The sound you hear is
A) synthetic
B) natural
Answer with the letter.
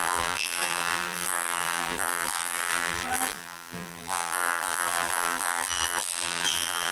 A